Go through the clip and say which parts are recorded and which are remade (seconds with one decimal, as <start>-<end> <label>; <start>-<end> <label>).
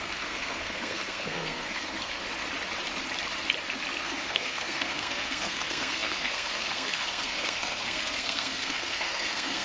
0.0-2.2 remade; 2.2-4.0 recorded; 4.0-9.6 remade